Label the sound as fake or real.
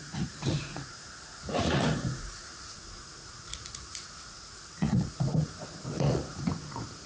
fake